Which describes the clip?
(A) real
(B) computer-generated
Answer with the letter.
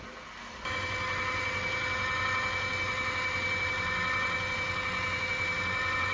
A